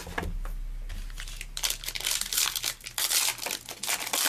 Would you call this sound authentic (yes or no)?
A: yes